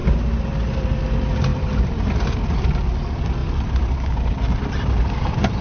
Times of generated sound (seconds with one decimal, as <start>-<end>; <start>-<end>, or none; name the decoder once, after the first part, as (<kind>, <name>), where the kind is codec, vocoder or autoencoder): 0.0-1.0 (vocoder, BigVGAN v2); 1.5-2.2